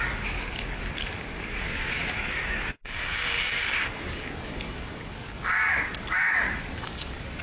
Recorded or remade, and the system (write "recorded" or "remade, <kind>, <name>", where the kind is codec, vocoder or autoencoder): remade, codec, DAC